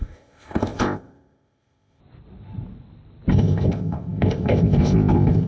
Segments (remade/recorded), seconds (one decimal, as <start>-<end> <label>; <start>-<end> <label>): 0.0-2.0 remade; 2.0-3.3 recorded; 3.3-5.5 remade